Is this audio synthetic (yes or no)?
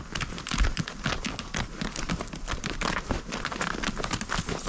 no